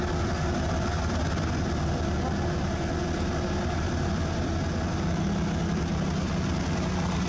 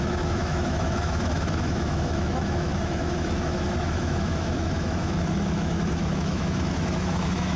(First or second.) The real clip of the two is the first